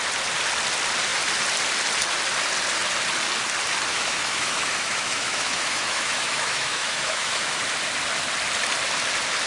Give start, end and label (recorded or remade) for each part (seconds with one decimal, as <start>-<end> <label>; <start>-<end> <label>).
0.0-3.9 recorded; 3.9-7.6 remade; 7.6-9.5 recorded